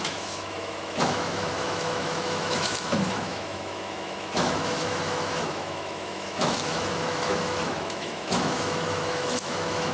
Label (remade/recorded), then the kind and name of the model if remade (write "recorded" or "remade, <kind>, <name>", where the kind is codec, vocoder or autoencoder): remade, autoencoder, DAC-VAE